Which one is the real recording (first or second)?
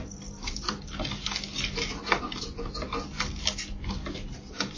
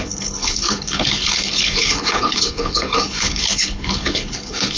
first